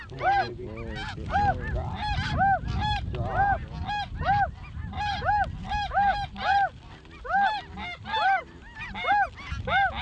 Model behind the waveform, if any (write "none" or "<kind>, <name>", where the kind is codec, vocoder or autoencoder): none